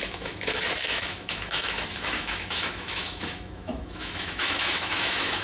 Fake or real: fake